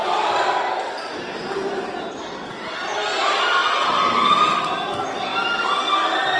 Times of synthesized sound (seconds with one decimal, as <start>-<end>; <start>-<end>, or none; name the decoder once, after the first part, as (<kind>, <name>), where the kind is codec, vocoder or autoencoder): none